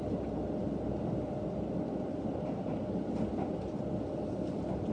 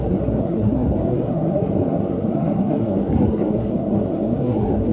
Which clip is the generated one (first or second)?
second